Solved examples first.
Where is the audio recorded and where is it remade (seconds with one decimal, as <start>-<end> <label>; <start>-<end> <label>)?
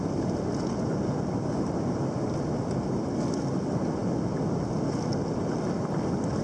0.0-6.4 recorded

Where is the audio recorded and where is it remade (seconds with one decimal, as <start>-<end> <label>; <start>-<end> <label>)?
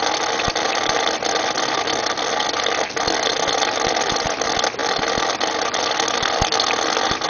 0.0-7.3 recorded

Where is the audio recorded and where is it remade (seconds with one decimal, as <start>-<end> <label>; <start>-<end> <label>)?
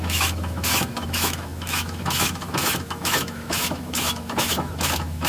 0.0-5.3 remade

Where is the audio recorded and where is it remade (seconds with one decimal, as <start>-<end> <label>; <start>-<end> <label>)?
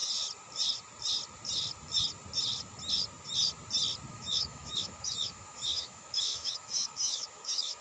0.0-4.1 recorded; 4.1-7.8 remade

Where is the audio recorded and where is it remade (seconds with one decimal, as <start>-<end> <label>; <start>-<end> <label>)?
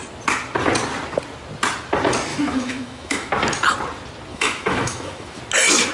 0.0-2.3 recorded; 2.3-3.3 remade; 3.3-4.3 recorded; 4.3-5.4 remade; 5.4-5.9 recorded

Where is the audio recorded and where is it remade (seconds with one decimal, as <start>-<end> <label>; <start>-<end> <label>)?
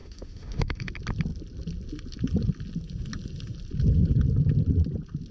0.0-0.9 remade; 0.9-5.3 recorded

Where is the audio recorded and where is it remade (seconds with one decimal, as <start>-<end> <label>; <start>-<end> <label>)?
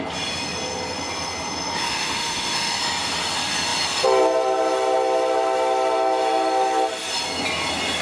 0.0-1.8 recorded; 1.8-2.8 remade; 2.8-8.0 recorded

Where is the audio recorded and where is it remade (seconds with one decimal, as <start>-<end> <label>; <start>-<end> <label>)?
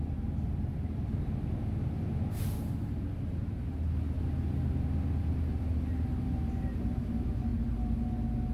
0.0-8.5 recorded